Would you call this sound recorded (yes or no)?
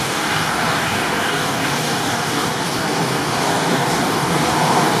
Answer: no